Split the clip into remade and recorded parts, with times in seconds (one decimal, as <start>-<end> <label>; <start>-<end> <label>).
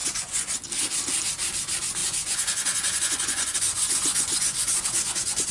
0.0-0.6 remade; 0.6-2.0 recorded; 2.0-5.5 remade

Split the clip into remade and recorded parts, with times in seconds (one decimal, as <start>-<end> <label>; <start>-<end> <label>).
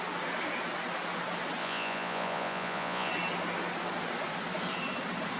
0.0-1.6 recorded; 1.6-3.1 remade; 3.1-5.4 recorded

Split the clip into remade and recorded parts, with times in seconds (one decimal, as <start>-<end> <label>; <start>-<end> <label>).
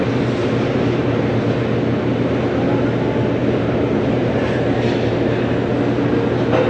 0.0-0.4 recorded; 0.4-1.0 remade; 1.0-3.4 recorded; 3.4-5.7 remade; 5.7-6.7 recorded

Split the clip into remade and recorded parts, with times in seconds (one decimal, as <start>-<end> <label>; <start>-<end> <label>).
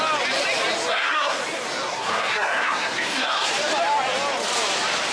0.0-0.9 recorded; 0.9-1.4 remade; 1.4-1.9 recorded; 1.9-3.5 remade; 3.5-5.1 recorded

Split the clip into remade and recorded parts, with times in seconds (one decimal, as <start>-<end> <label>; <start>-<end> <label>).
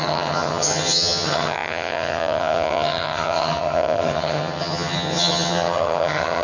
0.0-6.4 remade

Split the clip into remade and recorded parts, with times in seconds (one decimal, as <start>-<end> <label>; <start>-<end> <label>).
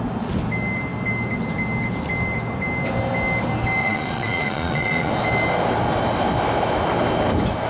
0.0-3.8 recorded; 3.8-5.1 remade; 5.1-7.7 recorded